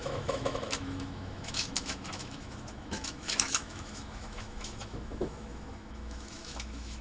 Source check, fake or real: fake